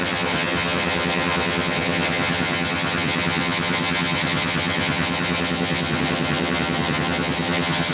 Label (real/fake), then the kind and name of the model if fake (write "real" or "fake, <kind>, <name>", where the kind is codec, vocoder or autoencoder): fake, vocoder, HiFi-GAN